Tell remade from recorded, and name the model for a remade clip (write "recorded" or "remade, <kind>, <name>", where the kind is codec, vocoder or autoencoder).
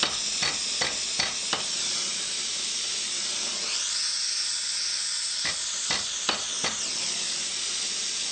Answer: remade, vocoder, BigVGAN v2